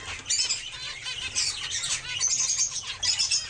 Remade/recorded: recorded